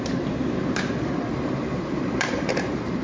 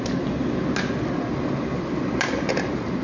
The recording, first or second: second